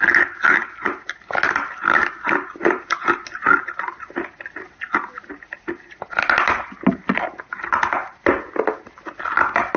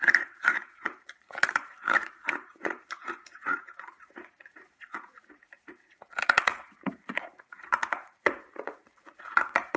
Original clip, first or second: first